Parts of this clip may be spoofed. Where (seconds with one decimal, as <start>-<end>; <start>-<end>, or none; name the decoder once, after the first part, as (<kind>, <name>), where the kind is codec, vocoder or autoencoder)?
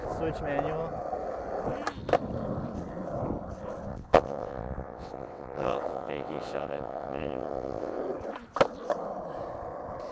3.9-8.0 (vocoder, WaveNeXt)